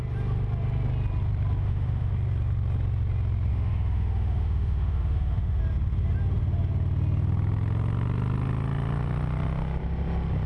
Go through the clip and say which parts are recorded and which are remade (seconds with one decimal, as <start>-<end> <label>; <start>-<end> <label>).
0.0-1.6 recorded; 1.6-2.1 remade; 2.1-3.5 recorded; 3.5-5.6 remade; 5.6-10.5 recorded